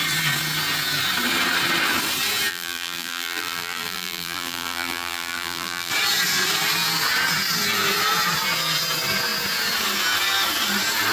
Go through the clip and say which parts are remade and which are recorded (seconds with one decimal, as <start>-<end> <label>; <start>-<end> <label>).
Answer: 0.0-2.5 recorded; 2.5-5.9 remade; 5.9-11.1 recorded